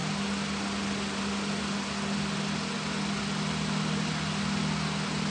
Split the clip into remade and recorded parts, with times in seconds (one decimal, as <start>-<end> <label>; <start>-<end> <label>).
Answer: 0.0-5.3 recorded